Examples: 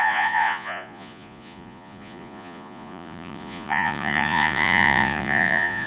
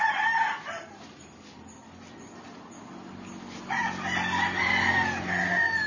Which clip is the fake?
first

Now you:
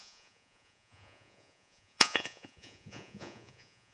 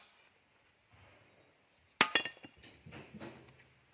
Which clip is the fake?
first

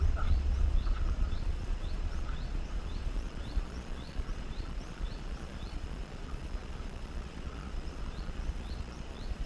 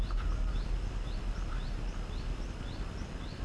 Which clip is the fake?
first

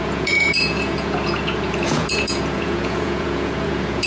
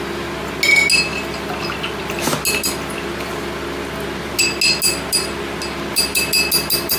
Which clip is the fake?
first